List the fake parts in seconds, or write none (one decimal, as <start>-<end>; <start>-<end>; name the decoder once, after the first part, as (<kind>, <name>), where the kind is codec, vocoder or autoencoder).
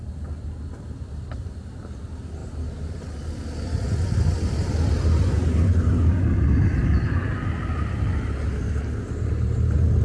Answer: none